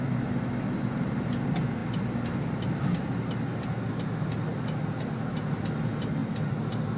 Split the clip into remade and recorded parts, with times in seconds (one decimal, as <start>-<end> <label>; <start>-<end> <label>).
0.0-7.0 recorded